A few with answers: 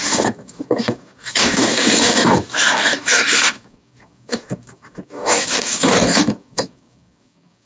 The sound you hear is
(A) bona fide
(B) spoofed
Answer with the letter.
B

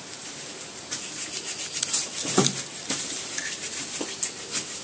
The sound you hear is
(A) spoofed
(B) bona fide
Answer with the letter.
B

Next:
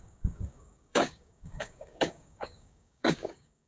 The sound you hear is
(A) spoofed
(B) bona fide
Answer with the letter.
A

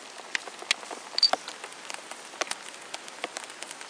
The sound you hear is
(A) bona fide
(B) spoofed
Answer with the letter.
A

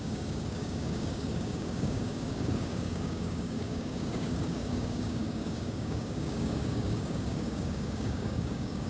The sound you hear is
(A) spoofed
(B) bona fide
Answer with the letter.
A